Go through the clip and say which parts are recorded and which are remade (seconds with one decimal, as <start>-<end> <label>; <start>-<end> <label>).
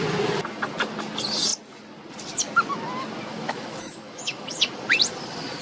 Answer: 0.0-3.3 recorded; 3.3-4.6 remade; 4.6-5.6 recorded